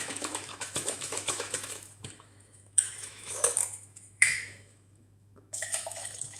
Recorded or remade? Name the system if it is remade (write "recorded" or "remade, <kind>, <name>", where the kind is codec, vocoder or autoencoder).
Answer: remade, autoencoder, DAC-VAE